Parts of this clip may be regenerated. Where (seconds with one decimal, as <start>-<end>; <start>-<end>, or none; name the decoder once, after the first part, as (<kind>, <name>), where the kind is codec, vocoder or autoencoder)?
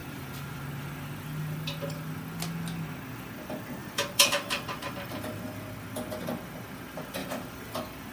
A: 0.0-0.6 (vocoder, BigVGAN v2); 3.8-4.8; 7.2-8.1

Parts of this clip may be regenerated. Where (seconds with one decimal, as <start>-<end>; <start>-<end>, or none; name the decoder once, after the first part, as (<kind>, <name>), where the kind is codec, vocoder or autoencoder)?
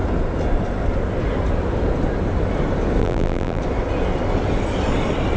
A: 3.0-3.6 (vocoder, BigVGAN v2)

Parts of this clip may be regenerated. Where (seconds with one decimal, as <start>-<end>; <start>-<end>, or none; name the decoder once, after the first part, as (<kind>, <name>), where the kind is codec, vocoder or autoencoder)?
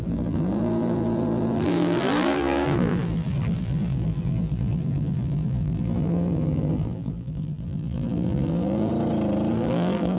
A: 0.0-8.9 (vocoder, BigVGAN v2); 9.5-10.2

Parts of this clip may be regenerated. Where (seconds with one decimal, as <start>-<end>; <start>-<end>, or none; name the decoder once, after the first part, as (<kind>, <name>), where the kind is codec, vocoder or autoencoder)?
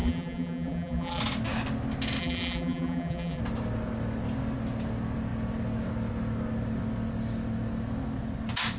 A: 0.0-1.2 (vocoder, BigVGAN v2); 2.2-3.4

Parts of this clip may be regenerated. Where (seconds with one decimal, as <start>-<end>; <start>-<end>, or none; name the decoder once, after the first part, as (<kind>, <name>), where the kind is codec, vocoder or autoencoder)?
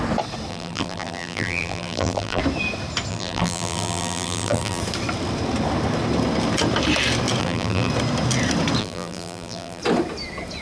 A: 0.5-2.4 (vocoder, BigVGAN v2); 3.1-4.8; 7.4-7.9; 8.8-9.8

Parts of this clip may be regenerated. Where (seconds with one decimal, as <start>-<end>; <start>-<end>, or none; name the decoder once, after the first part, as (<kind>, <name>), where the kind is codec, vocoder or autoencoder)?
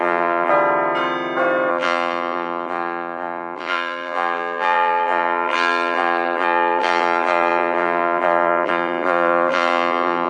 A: 0.0-0.5 (vocoder, BigVGAN v2); 1.7-10.3